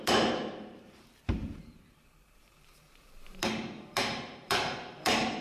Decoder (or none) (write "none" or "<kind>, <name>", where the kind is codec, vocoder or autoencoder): vocoder, BigVGAN v2